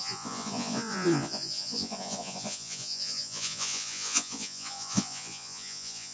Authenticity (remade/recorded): remade